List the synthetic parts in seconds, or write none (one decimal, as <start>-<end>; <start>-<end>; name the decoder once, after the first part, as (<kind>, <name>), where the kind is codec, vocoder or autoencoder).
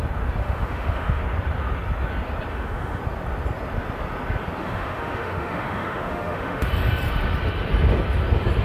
0.4-1.2 (autoencoder, DAC-VAE); 2.5-3.0; 4.6-6.7